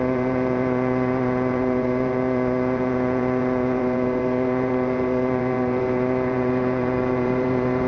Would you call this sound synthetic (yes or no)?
yes